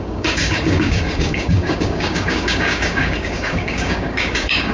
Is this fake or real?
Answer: fake